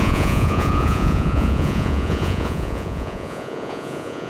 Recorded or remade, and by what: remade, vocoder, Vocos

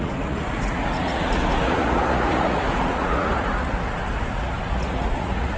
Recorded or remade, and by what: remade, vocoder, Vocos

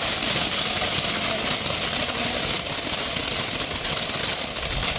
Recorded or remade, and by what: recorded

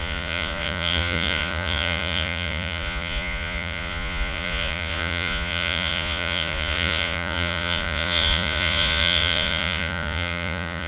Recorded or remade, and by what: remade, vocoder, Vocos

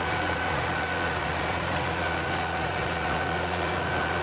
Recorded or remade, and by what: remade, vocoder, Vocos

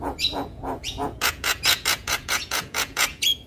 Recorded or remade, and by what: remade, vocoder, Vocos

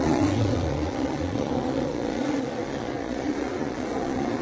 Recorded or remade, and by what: remade, vocoder, Vocos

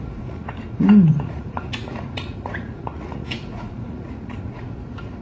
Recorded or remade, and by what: remade, vocoder, Vocos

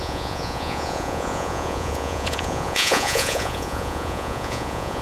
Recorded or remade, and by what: remade, vocoder, Vocos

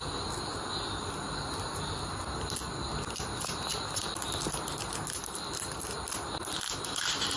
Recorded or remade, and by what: recorded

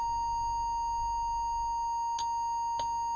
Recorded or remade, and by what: recorded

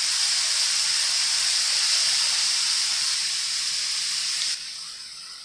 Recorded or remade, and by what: recorded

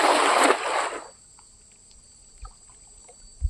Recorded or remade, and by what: recorded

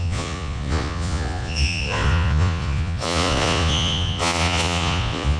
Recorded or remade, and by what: remade, vocoder, Vocos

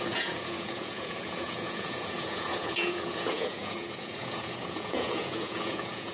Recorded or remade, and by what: remade, vocoder, Vocos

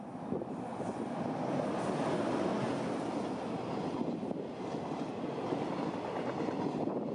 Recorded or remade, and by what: recorded